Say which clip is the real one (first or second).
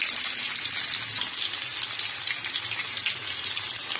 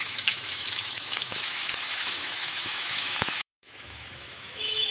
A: first